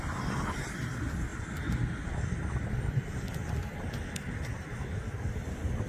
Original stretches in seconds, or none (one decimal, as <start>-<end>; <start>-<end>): 0.0-5.9